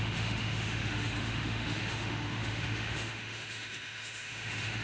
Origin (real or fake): fake